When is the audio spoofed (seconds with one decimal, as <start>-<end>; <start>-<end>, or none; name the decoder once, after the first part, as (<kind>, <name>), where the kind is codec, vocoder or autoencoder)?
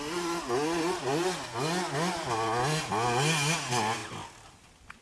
none